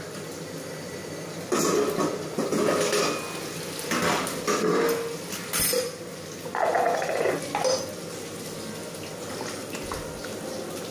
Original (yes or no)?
yes